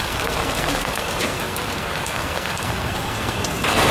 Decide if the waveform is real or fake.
fake